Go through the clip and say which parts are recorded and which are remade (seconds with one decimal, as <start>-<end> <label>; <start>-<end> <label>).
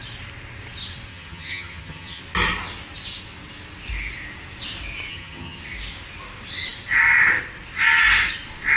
0.0-1.1 recorded; 1.1-2.2 remade; 2.2-5.1 recorded; 5.1-5.6 remade; 5.6-8.8 recorded